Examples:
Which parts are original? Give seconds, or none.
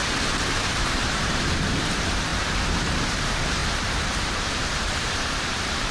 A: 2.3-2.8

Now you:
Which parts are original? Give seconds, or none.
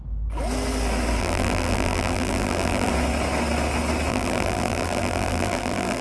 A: 0.0-1.2; 2.9-4.1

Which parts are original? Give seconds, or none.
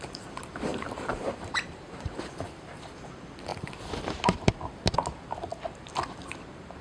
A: 0.0-0.7; 2.2-6.8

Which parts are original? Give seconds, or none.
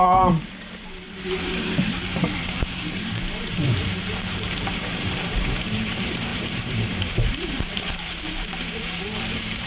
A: none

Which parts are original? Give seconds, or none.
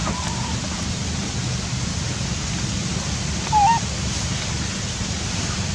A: 0.0-5.7